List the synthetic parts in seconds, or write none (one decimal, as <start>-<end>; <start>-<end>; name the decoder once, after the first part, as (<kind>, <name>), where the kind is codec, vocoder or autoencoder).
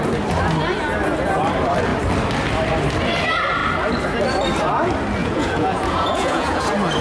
5.2-6.6 (vocoder, Vocos)